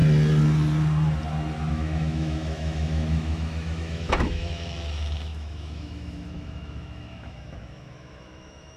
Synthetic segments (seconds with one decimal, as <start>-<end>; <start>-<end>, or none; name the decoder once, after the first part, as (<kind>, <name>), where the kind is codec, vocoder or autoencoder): 1.7-8.8 (autoencoder, DAC-VAE)